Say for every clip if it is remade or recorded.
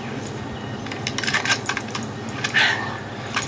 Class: recorded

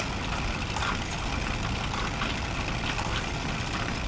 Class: recorded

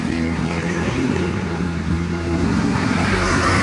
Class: remade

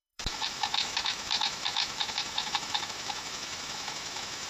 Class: remade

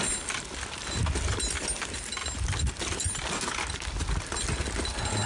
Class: recorded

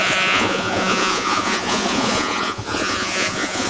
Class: remade